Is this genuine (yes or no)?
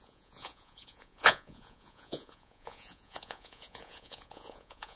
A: no